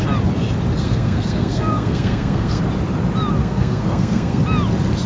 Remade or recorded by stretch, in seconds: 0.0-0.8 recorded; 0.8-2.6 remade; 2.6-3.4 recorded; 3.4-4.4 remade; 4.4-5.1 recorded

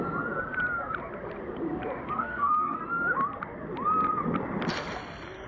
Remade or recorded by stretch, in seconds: 0.0-2.1 recorded; 2.1-2.8 remade; 2.8-5.5 recorded

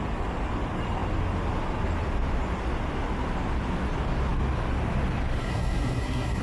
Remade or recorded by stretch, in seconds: 0.0-5.4 recorded; 5.4-6.4 remade

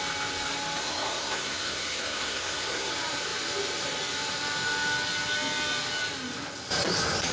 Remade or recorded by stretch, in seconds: 0.0-0.8 recorded; 0.8-2.9 remade; 2.9-7.3 recorded

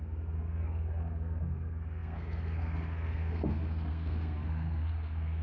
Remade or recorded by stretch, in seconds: 0.0-5.4 remade

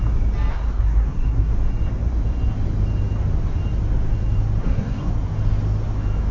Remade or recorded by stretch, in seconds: 0.0-0.5 recorded; 0.5-1.5 remade; 1.5-4.6 recorded; 4.6-5.1 remade; 5.1-6.3 recorded

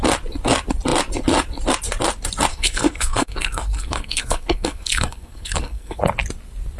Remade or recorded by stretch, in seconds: 0.0-2.5 recorded; 2.5-6.0 remade; 6.0-6.8 recorded